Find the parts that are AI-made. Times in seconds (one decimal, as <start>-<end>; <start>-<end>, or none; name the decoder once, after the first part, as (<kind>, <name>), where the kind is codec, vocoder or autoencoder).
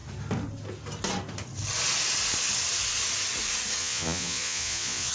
3.8-5.1 (vocoder, Vocos)